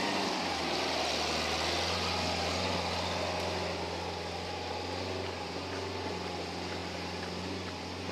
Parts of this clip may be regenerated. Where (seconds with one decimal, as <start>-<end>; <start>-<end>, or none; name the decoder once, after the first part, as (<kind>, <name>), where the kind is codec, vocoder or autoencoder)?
6.8-7.4 (vocoder, BigVGAN v2)